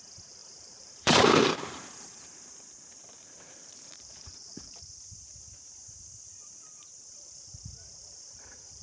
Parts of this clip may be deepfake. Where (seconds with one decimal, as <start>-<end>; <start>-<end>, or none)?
0.0-8.8